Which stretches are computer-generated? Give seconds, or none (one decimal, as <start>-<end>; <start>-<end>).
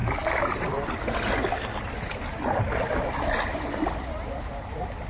none